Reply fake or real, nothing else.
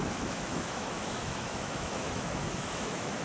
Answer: fake